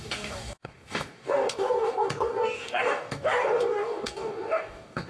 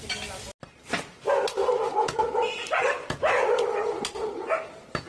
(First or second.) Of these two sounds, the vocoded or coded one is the first